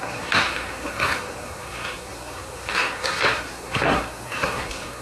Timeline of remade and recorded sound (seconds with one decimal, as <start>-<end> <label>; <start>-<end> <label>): 0.0-5.0 remade